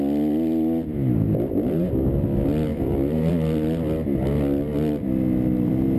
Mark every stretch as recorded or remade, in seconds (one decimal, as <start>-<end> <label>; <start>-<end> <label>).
0.0-0.9 recorded; 0.9-1.9 remade; 1.9-2.7 recorded; 2.7-3.3 remade; 3.3-6.0 recorded